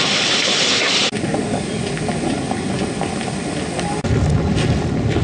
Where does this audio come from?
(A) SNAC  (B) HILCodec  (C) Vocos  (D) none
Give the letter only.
D